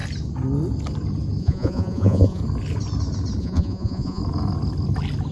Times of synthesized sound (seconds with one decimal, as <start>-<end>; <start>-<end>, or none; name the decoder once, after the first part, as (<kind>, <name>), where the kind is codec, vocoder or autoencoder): 1.4-2.4 (vocoder, Vocos); 3.4-4.2